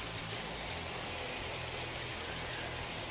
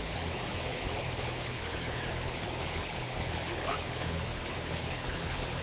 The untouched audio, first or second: first